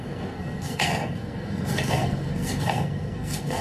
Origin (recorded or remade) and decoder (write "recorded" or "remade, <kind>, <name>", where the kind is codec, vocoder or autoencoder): remade, codec, SNAC